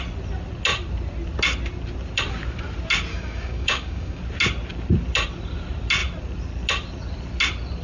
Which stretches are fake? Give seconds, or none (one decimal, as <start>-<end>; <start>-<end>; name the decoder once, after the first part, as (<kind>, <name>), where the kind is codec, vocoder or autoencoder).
3.1-4.2 (codec, DAC)